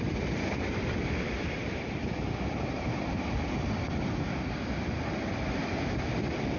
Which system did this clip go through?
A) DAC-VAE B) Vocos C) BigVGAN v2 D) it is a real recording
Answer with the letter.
C